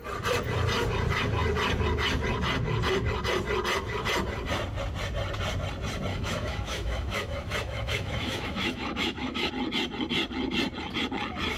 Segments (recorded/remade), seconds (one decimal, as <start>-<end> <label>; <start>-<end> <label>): 0.0-6.1 recorded; 6.1-9.5 remade; 9.5-11.6 recorded